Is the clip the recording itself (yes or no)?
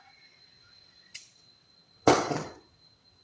no